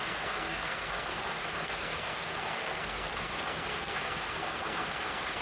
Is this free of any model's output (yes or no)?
no